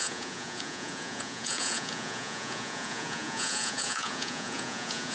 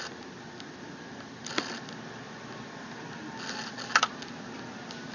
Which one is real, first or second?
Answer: second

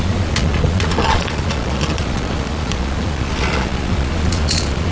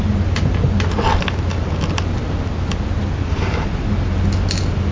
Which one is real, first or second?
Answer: second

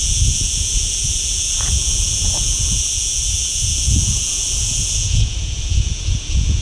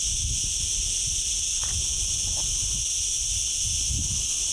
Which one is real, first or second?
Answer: second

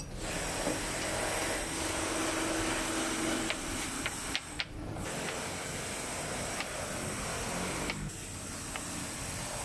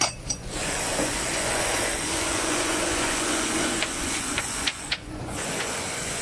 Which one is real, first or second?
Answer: first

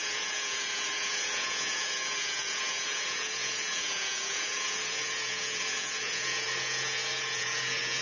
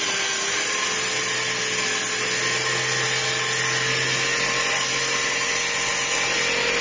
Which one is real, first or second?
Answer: second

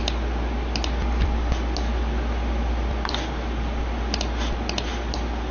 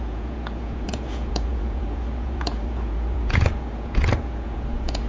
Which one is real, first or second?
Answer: first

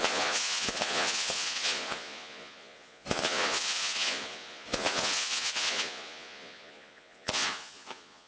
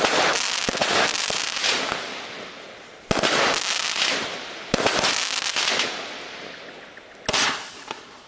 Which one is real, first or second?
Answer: second